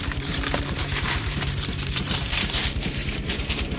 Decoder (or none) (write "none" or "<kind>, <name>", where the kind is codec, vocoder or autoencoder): vocoder, BigVGAN v2